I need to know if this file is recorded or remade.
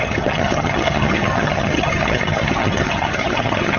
remade